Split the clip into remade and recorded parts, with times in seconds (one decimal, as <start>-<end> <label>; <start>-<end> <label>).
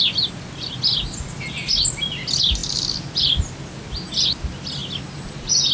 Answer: 0.0-5.7 recorded